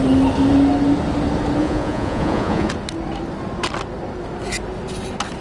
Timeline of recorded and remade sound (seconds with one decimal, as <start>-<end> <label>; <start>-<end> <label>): 0.0-1.6 recorded; 1.6-2.7 remade; 2.7-5.4 recorded